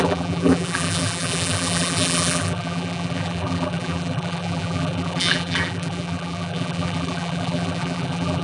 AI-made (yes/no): yes